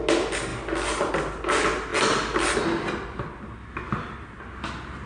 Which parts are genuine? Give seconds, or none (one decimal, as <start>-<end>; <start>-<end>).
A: 0.0-5.1